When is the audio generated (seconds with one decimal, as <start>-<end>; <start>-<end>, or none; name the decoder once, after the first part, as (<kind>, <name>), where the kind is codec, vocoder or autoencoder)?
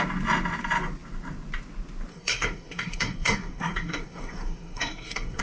2.1-5.4 (codec, SNAC)